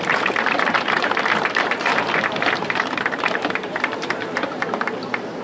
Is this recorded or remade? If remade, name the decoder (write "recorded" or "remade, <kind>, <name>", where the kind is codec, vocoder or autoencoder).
remade, vocoder, BigVGAN v2